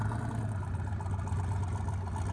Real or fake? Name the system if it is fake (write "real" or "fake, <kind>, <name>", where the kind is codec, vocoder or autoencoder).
real